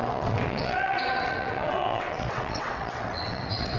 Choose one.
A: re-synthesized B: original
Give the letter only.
A